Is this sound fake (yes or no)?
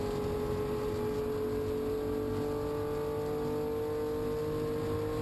no